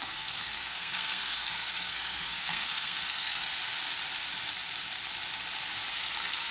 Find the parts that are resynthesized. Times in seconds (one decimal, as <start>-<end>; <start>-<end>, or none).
0.0-3.5; 5.9-6.5